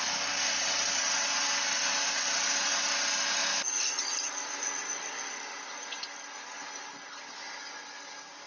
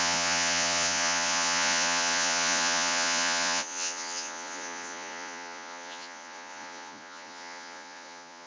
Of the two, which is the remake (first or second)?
second